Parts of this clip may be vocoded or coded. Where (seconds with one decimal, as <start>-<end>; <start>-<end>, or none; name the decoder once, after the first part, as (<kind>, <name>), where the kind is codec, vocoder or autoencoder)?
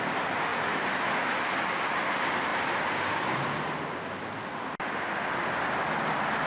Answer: none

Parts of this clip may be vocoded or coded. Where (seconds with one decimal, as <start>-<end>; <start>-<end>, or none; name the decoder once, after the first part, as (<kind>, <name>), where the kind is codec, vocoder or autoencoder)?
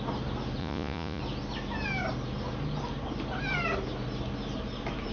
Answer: 0.6-1.2 (vocoder, Vocos)